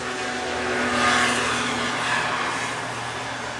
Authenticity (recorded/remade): recorded